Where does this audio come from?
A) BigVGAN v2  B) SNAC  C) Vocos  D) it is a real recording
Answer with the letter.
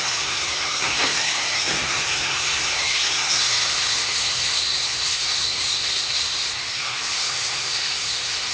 B